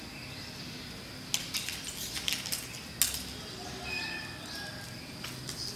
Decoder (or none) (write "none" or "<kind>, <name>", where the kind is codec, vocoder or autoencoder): none